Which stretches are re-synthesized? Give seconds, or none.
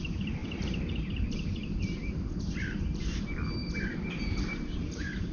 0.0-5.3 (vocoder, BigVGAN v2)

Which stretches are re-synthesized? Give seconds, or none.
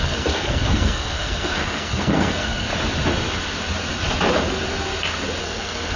0.0-2.7 (codec, SNAC); 5.4-6.0